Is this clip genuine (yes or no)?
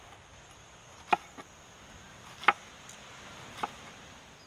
yes